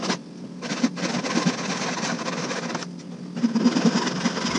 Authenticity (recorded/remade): recorded